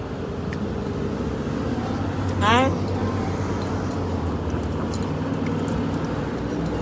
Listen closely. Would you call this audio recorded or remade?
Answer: recorded